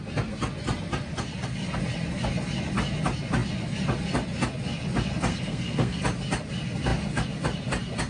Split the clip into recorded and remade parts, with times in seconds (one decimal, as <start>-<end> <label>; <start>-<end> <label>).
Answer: 0.0-5.3 recorded; 5.3-6.0 remade; 6.0-8.1 recorded

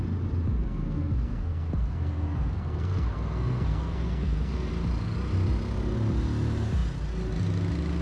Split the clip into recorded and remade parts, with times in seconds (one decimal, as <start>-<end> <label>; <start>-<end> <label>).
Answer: 0.0-0.5 recorded; 0.5-4.7 remade; 4.7-8.0 recorded